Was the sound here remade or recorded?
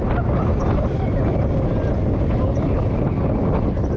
recorded